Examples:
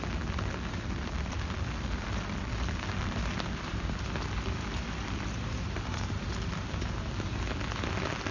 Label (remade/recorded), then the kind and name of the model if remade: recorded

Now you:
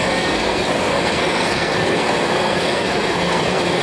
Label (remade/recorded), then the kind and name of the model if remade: remade, codec, SNAC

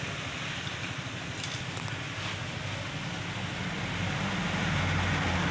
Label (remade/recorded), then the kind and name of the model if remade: recorded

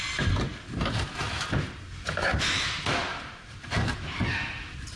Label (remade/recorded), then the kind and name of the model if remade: recorded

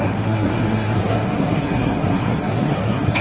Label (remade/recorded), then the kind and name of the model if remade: remade, codec, SNAC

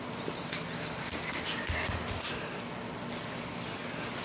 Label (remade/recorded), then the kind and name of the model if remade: recorded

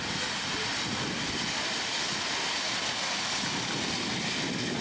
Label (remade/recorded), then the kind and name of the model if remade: recorded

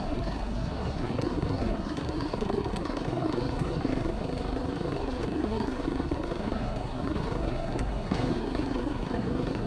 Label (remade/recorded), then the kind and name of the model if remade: remade, codec, SNAC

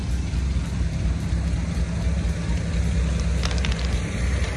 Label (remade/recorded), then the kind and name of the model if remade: recorded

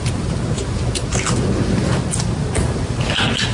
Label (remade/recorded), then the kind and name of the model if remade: recorded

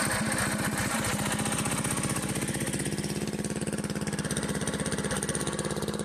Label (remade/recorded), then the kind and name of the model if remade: recorded